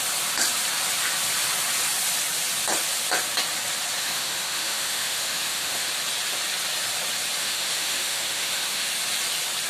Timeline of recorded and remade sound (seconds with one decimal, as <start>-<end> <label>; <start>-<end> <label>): 0.0-4.0 recorded; 4.0-5.9 remade; 5.9-7.4 recorded; 7.4-8.9 remade; 8.9-9.7 recorded